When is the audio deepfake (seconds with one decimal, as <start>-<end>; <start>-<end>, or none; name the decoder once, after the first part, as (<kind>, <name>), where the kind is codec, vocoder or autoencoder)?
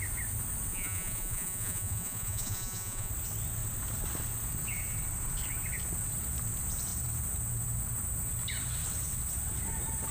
0.7-3.1 (vocoder, Vocos)